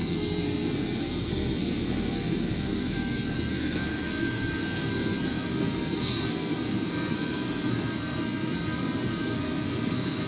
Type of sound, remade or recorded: remade